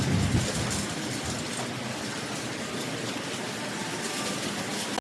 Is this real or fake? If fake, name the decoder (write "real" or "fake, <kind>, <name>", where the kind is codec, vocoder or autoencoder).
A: real